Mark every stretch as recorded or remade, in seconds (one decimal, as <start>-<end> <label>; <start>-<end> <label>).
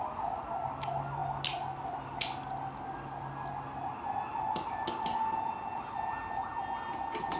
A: 0.0-7.4 recorded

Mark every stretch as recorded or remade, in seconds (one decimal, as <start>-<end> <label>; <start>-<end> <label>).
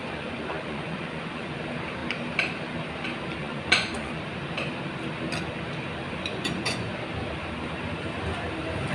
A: 0.0-1.6 remade; 1.6-3.4 recorded; 3.4-4.2 remade; 4.2-6.3 recorded; 6.3-6.9 remade; 6.9-8.9 recorded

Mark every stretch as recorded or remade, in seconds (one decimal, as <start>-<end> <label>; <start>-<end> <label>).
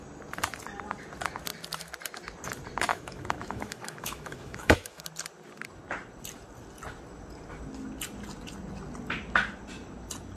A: 0.0-2.9 recorded; 2.9-5.0 remade; 5.0-10.4 recorded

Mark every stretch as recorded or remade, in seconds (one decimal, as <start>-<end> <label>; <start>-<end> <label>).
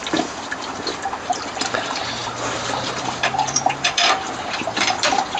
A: 0.0-1.1 recorded; 1.1-5.4 remade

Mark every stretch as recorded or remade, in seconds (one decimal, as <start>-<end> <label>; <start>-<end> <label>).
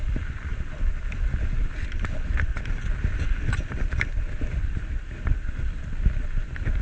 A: 0.0-2.5 recorded; 2.5-6.3 remade; 6.3-6.8 recorded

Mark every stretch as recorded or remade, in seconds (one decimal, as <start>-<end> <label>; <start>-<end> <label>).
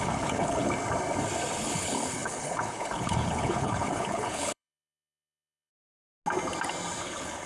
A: 0.0-0.6 remade; 0.6-1.6 recorded; 1.6-5.7 remade; 5.7-7.0 recorded; 7.0-7.5 remade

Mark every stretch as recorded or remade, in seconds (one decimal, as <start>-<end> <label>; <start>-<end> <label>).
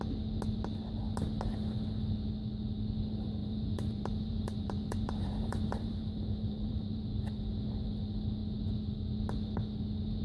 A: 0.0-3.4 recorded; 3.4-7.0 remade; 7.0-10.2 recorded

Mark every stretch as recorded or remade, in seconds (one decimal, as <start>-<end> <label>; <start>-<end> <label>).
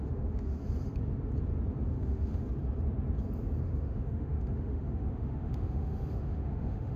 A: 0.0-0.6 remade; 0.6-1.9 recorded; 1.9-2.4 remade; 2.4-3.6 recorded; 3.6-7.0 remade